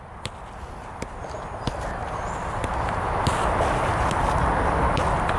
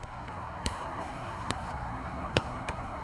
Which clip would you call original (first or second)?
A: first